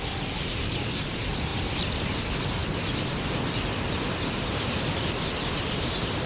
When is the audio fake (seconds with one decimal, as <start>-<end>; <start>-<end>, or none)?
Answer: none